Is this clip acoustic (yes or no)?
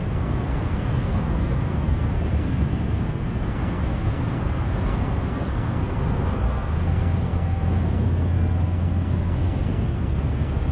no